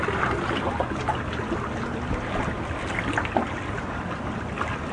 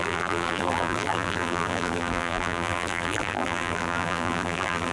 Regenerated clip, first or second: second